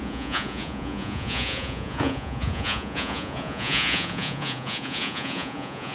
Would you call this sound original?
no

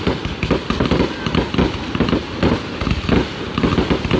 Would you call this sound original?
yes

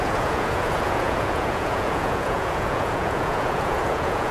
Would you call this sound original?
no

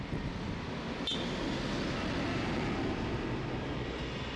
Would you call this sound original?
yes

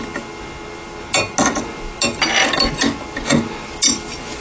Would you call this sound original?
yes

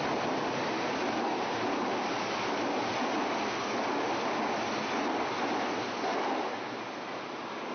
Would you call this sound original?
yes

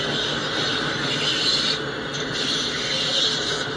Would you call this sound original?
yes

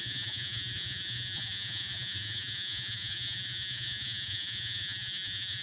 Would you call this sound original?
no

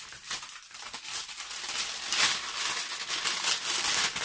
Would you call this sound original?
yes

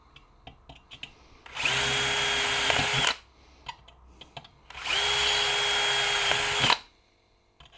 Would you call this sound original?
yes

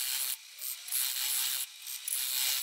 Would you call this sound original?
yes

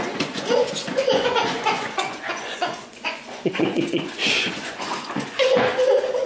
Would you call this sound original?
no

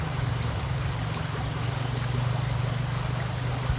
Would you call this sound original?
yes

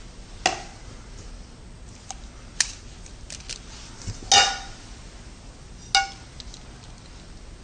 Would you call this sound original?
yes